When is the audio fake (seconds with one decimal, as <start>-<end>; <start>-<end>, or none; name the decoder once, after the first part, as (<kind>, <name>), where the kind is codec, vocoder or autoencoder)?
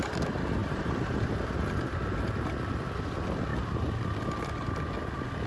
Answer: 0.6-2.3 (vocoder, BigVGAN v2)